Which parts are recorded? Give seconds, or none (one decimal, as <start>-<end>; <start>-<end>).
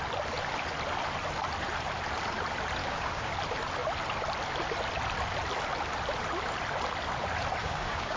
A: 0.0-2.8; 3.3-7.6